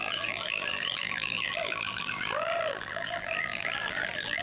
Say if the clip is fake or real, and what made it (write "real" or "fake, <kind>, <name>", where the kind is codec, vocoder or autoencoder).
fake, vocoder, BigVGAN v2